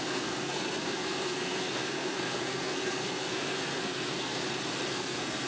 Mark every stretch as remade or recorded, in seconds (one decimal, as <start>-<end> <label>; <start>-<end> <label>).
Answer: 0.0-4.4 remade; 4.4-4.9 recorded; 4.9-5.5 remade